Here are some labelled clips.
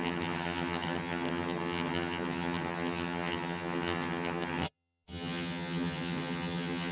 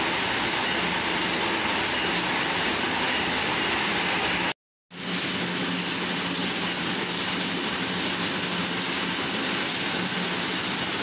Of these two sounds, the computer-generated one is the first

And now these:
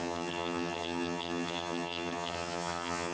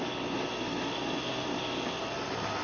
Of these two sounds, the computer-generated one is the first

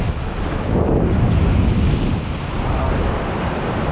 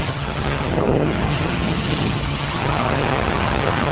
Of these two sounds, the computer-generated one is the second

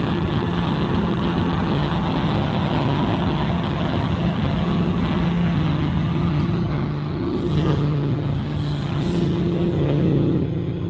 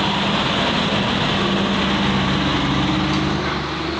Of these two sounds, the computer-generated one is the first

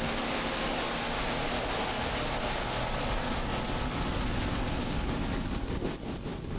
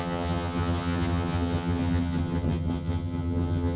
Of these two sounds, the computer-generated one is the second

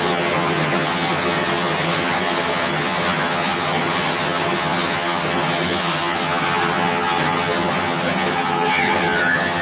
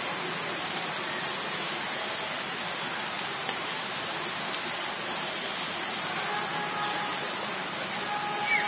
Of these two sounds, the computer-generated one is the first